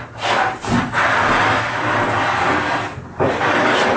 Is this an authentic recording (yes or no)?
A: yes